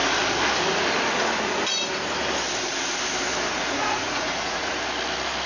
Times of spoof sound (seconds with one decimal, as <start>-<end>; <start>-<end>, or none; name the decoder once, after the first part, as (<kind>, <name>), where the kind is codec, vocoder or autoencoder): 3.5-4.7 (vocoder, Vocos)